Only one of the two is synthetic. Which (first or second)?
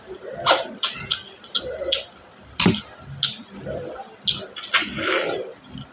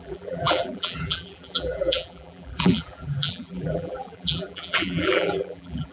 second